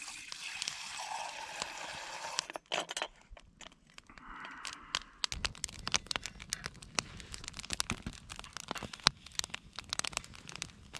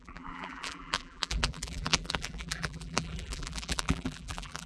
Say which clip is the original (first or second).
first